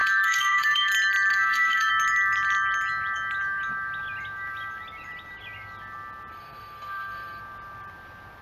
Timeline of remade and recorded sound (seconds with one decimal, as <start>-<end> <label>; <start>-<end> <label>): 0.0-0.9 remade; 0.9-1.3 recorded; 1.3-1.9 remade; 1.9-6.3 recorded; 6.3-7.4 remade; 7.4-8.4 recorded

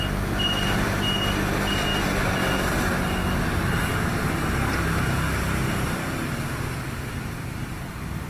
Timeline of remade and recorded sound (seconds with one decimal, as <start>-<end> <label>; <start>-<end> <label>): 0.0-8.3 recorded

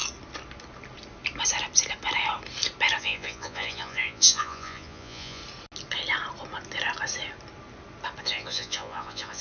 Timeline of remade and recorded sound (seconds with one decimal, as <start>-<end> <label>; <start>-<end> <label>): 0.0-3.0 recorded; 3.0-5.4 remade; 5.4-8.2 recorded; 8.2-9.4 remade